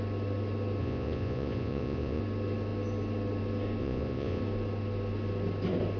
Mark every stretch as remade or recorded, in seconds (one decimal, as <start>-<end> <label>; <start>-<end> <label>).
0.0-0.8 recorded; 0.8-2.2 remade; 2.2-3.8 recorded; 3.8-4.4 remade; 4.4-6.0 recorded